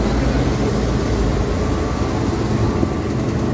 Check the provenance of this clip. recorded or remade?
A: recorded